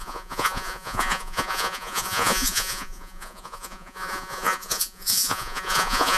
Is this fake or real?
fake